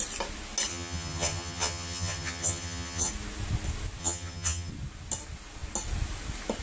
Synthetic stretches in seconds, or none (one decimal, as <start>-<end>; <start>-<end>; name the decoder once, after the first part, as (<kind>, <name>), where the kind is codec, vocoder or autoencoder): 0.7-3.1 (vocoder, HiFi-GAN); 4.0-4.7